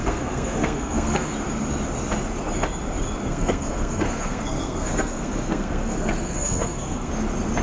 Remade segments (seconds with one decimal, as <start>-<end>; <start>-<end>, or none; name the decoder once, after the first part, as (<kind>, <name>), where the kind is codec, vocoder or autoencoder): 0.0-1.3 (codec, SNAC); 3.2-7.1